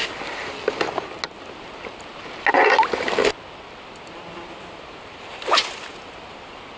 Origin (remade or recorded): recorded